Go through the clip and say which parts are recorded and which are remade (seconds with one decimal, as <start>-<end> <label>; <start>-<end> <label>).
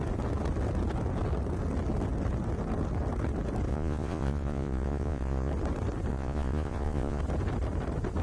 0.0-3.7 recorded; 3.7-5.5 remade; 5.5-6.1 recorded; 6.1-7.2 remade; 7.2-8.2 recorded